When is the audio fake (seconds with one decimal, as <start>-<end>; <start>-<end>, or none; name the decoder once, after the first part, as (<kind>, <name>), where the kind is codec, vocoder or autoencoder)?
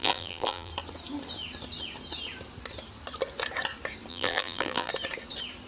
0.0-0.7 (vocoder, BigVGAN v2); 4.1-4.9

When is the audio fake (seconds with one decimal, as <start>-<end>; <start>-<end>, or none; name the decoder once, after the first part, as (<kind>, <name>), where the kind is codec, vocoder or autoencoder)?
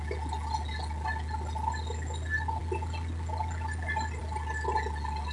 none